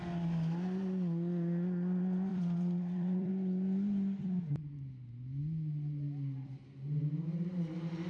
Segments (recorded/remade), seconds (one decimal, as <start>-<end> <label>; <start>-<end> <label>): 0.0-2.3 recorded; 2.3-3.3 remade; 3.3-8.1 recorded